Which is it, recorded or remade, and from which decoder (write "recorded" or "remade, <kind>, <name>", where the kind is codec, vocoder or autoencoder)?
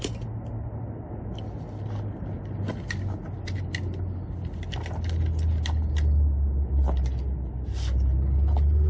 recorded